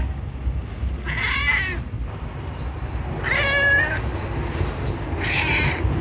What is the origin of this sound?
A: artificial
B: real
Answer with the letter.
B